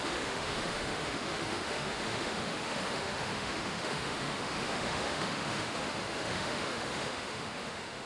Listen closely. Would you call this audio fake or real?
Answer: fake